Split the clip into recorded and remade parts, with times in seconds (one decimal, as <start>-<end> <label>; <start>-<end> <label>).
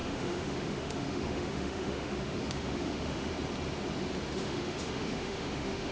0.0-3.3 remade; 3.3-4.3 recorded; 4.3-5.9 remade